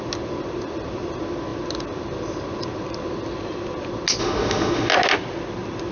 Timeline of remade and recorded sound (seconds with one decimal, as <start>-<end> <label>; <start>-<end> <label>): 0.0-4.2 recorded; 4.2-4.9 remade; 4.9-5.9 recorded